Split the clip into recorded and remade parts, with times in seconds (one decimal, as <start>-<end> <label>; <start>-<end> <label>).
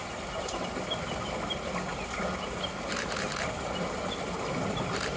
0.0-5.2 recorded